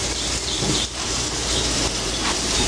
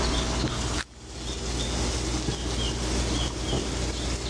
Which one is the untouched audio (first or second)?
second